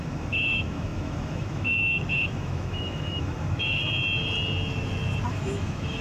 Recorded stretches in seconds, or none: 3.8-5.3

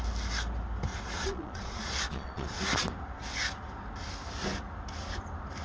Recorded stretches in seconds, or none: 0.0-0.9; 2.6-5.6

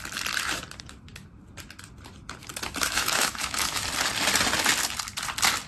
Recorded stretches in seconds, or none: 0.0-2.8; 3.8-5.7

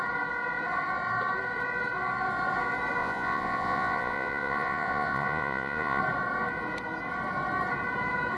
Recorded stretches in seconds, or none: 0.0-3.0; 6.0-8.4

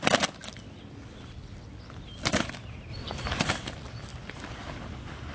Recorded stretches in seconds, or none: 0.0-2.9; 3.4-5.3

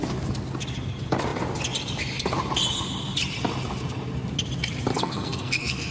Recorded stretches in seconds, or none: 0.0-4.9

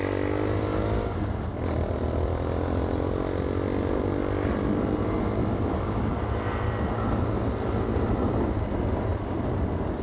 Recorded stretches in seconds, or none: 0.0-10.0